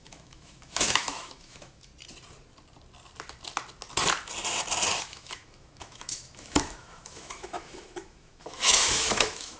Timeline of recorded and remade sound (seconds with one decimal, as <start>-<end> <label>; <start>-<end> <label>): 0.0-1.9 remade; 1.9-5.0 recorded; 5.0-9.6 remade